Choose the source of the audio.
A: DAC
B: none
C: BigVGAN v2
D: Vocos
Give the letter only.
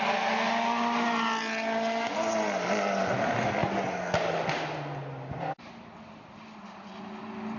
B